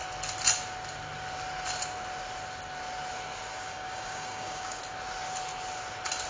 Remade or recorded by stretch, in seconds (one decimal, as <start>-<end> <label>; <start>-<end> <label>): 0.0-3.5 recorded; 3.5-4.8 remade; 4.8-6.3 recorded